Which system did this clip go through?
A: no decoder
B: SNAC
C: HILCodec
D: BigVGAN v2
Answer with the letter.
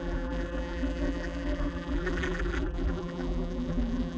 D